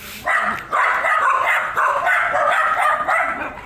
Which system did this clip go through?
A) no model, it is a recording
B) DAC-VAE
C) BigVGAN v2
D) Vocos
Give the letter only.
A